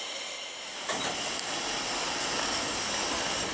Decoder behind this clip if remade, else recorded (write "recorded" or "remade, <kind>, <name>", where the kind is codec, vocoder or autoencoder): recorded